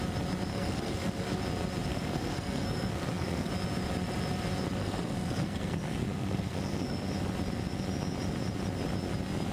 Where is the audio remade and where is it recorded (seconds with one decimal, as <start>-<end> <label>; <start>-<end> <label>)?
0.0-0.5 recorded; 0.5-1.4 remade; 1.4-1.9 recorded; 1.9-3.5 remade; 3.5-4.8 recorded; 4.8-7.0 remade; 7.0-9.5 recorded